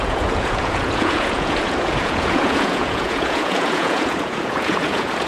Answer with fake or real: fake